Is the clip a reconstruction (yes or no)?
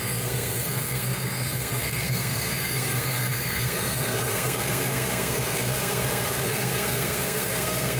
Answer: yes